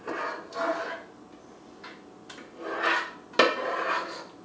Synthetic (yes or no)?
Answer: no